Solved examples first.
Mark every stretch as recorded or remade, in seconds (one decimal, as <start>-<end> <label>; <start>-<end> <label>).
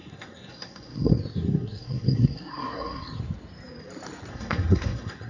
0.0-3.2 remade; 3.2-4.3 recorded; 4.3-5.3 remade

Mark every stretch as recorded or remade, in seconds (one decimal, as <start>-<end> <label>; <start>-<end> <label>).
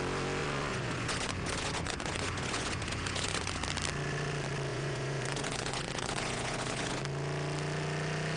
0.0-0.4 recorded; 0.4-3.6 remade; 3.6-4.7 recorded; 4.7-7.0 remade; 7.0-8.4 recorded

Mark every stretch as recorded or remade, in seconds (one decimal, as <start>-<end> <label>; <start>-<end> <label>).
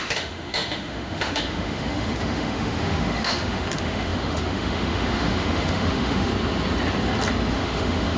0.0-6.3 remade; 6.3-7.5 recorded; 7.5-8.2 remade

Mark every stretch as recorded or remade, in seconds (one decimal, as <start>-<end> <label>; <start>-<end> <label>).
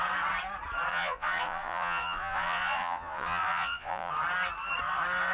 0.0-0.9 recorded; 0.9-4.1 remade; 4.1-5.3 recorded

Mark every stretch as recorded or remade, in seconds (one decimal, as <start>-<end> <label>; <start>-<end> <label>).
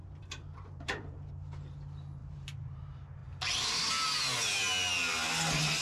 0.0-1.3 remade; 1.3-2.2 recorded; 2.2-2.8 remade; 2.8-5.8 recorded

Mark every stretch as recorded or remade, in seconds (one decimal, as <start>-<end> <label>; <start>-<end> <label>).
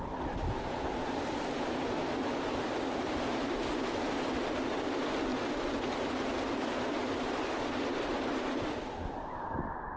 0.0-10.0 recorded